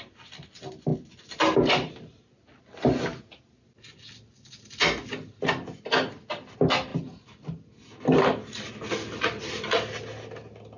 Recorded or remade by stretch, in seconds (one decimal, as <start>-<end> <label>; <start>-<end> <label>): 0.0-10.8 recorded